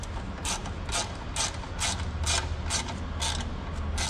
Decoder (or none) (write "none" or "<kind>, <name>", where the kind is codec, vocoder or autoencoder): none